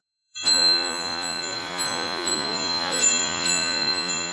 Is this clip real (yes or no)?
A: no